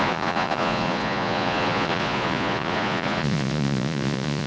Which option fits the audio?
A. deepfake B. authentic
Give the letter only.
A